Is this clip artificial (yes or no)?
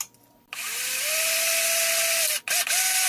no